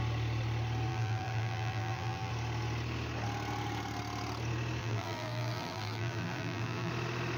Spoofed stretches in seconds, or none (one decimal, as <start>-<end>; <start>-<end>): 0.9-2.3; 4.8-6.9